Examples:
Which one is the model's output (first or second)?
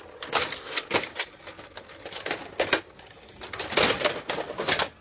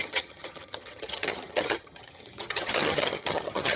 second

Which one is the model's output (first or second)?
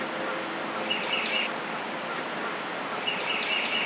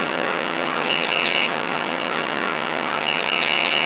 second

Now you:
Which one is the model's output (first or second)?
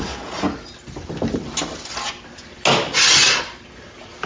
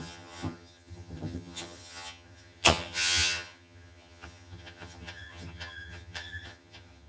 second